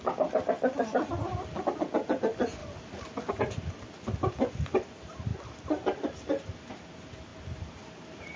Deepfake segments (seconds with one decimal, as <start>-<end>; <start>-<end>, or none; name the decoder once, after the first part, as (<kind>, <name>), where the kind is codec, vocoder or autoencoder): none